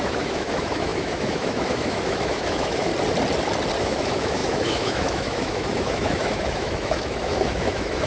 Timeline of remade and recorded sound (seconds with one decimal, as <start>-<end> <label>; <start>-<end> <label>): 0.0-2.9 remade; 2.9-3.8 recorded; 3.8-8.1 remade